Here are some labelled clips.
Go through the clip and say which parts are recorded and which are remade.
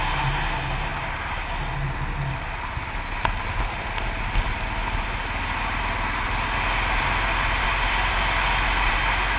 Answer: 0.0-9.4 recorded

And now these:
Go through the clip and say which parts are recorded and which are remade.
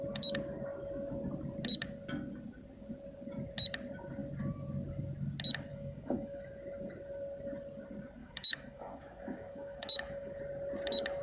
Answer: 0.0-5.7 recorded; 5.7-6.5 remade; 6.5-8.2 recorded; 8.2-10.4 remade; 10.4-11.2 recorded